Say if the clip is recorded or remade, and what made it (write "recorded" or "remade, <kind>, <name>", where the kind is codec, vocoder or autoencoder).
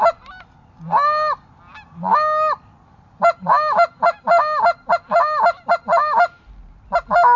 recorded